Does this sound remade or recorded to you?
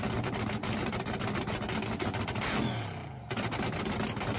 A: recorded